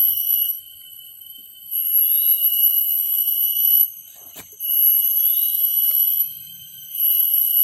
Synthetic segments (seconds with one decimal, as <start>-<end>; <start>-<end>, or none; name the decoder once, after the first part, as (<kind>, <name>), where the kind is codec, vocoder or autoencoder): 0.0-7.6 (vocoder, BigVGAN v2)